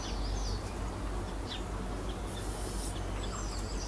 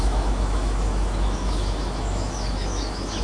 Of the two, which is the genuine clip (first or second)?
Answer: first